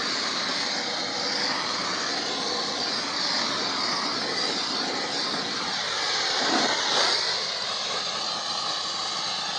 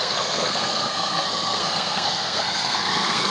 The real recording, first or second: first